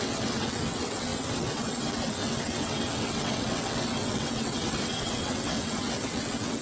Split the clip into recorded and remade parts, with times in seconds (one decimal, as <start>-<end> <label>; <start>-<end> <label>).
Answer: 0.0-6.6 remade